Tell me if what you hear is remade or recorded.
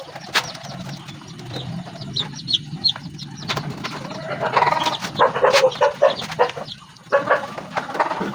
recorded